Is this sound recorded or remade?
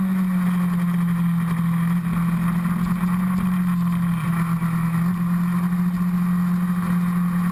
recorded